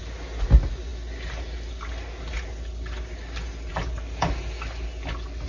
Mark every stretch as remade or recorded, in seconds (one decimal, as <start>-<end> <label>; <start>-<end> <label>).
0.0-5.5 recorded